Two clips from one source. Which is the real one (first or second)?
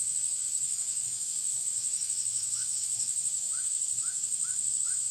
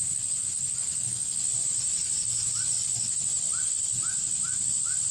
second